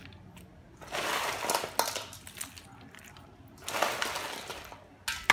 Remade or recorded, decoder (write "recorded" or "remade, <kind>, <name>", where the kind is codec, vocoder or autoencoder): recorded